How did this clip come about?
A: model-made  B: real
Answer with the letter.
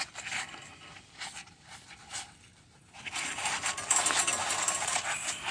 B